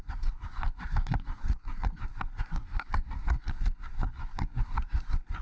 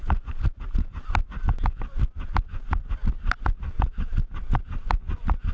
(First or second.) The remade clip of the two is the first